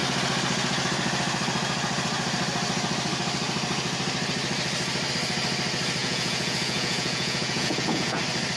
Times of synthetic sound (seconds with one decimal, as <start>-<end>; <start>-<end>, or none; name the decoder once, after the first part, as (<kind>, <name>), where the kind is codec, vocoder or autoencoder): 6.0-8.2 (vocoder, Vocos)